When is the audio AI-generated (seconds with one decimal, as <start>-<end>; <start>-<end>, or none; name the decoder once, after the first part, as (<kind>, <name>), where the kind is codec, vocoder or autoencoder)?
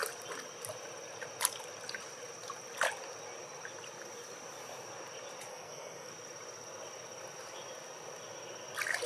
5.5-6.1 (codec, SNAC)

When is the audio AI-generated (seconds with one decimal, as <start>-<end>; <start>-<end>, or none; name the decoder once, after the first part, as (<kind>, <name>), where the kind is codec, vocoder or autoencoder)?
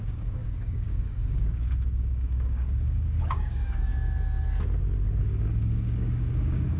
0.0-3.9 (codec, DAC); 5.2-6.8